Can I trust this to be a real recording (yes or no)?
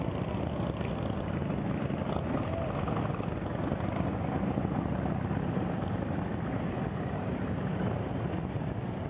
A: yes